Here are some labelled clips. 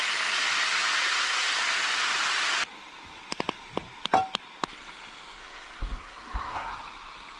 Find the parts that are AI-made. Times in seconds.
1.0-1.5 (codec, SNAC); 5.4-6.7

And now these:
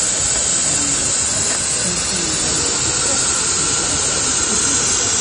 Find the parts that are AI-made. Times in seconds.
none

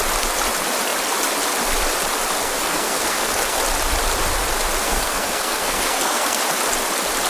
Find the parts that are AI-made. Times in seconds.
2.4-3.6 (codec, SNAC); 4.8-6.4

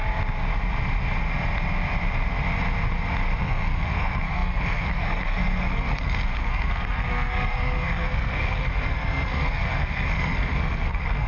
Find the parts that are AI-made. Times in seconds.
3.4-11.3 (codec, SNAC)

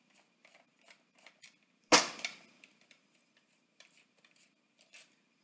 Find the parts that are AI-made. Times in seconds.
none

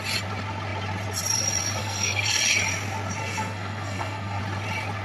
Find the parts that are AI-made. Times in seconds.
1.8-2.4 (codec, SNAC); 3.2-4.4